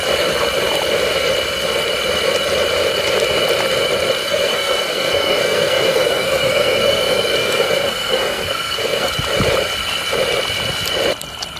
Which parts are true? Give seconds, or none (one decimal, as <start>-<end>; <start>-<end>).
0.0-4.2; 9.1-11.6

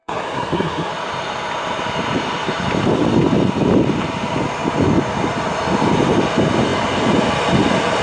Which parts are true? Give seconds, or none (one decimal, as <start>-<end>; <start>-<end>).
0.9-8.0